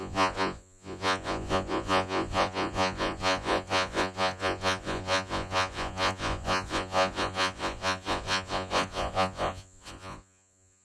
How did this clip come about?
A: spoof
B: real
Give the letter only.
A